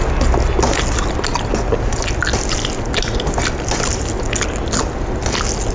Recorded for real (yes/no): yes